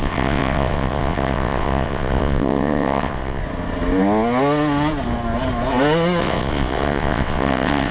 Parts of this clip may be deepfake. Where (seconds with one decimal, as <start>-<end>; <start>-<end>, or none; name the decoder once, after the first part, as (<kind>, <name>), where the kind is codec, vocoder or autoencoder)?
0.0-3.4 (vocoder, WaveNeXt); 6.2-7.9